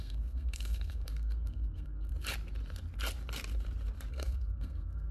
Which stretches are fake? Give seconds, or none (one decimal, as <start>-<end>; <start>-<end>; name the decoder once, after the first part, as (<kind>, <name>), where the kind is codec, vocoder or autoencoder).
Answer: 0.0-2.1 (codec, SNAC); 4.1-5.1